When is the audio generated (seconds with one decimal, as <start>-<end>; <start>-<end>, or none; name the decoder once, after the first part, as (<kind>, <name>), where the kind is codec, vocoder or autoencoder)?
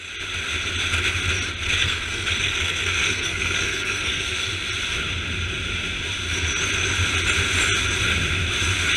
1.8-4.5 (codec, SNAC)